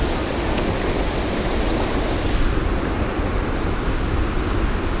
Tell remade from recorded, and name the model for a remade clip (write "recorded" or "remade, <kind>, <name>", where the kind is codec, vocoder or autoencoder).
recorded